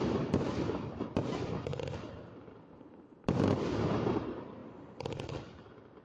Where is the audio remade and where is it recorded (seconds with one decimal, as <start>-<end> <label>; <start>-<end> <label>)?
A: 0.0-4.6 recorded; 4.6-5.2 remade; 5.2-6.0 recorded